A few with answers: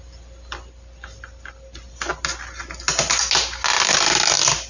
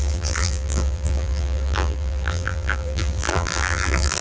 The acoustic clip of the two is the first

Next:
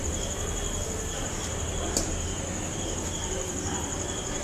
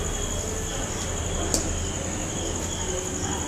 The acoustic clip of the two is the second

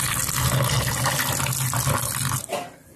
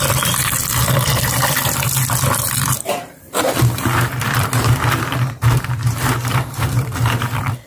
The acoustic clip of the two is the first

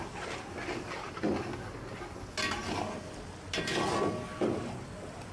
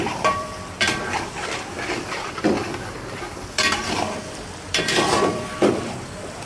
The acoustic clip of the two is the first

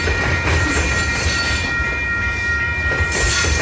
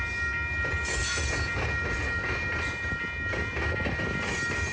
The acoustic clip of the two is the second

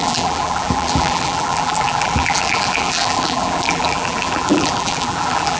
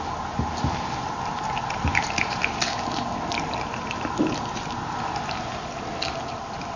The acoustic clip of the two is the second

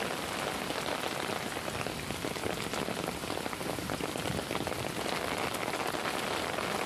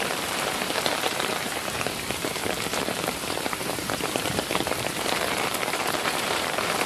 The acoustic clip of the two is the first